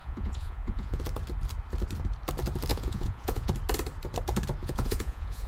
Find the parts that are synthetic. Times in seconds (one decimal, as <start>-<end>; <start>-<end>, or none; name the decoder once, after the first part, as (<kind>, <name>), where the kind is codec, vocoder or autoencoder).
0.0-1.0 (vocoder, Vocos); 2.7-3.5; 4.6-5.5

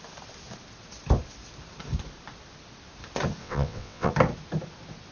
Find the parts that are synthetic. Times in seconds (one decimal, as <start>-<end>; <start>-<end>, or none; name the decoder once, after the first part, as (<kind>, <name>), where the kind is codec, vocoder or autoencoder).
3.4-4.1 (vocoder, WaveNeXt)

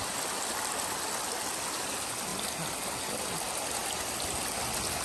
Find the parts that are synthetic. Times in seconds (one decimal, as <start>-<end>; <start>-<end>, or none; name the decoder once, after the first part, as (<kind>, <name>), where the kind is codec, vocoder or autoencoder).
none

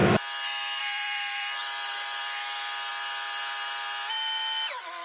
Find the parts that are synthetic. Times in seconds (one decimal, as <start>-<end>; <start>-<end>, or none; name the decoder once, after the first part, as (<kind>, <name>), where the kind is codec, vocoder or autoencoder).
0.8-5.0 (vocoder, BigVGAN v2)